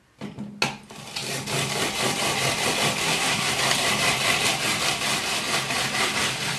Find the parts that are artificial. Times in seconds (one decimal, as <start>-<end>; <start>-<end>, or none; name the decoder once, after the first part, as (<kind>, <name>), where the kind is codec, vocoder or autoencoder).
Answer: 3.0-3.5 (codec, SNAC)